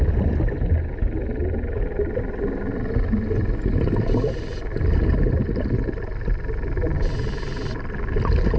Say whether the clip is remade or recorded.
recorded